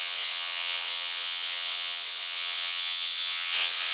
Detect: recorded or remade remade